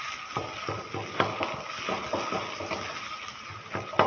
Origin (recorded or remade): recorded